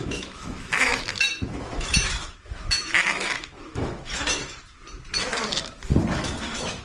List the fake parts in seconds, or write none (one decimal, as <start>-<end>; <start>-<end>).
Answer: 0.0-4.4; 6.1-6.8